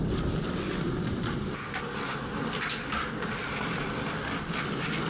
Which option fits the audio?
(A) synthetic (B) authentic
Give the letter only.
B